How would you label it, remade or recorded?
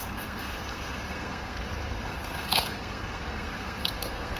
remade